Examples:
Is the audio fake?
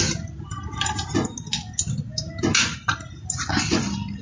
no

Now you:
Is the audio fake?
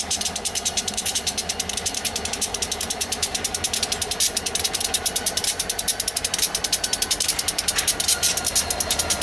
yes